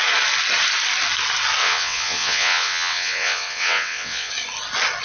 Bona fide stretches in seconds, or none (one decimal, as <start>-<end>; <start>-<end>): 0.0-1.6; 4.3-5.0